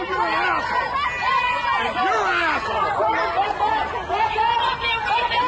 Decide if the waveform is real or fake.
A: real